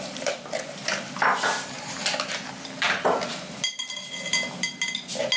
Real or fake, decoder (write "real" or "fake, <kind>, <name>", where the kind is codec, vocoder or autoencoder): real